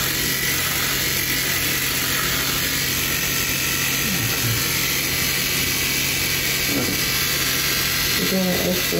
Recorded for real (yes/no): yes